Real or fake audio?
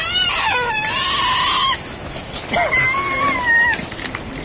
real